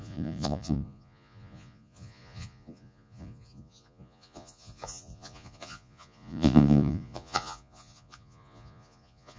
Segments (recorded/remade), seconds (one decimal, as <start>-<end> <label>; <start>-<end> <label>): 0.0-9.4 remade